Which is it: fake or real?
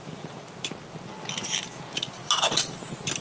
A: real